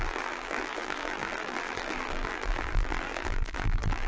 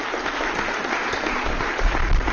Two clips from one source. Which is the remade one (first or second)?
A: first